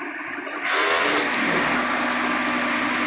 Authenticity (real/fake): real